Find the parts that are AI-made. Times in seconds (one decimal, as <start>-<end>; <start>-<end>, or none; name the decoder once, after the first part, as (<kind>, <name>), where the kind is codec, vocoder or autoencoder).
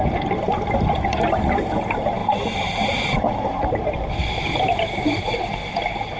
0.0-2.2 (vocoder, BigVGAN v2); 3.2-5.6